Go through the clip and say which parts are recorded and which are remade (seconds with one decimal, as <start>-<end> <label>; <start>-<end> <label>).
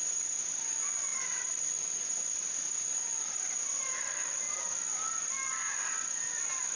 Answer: 0.0-1.1 recorded; 1.1-2.6 remade; 2.6-6.8 recorded